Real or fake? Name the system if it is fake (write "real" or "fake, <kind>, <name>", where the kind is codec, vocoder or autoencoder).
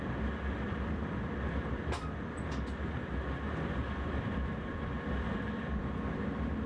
fake, vocoder, BigVGAN v2